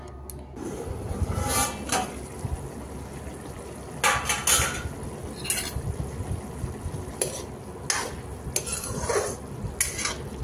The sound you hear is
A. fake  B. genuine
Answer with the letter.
B